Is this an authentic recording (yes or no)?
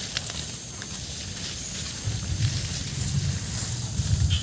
yes